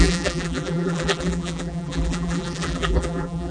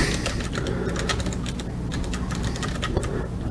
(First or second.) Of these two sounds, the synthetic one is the first